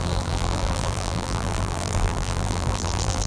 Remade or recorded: remade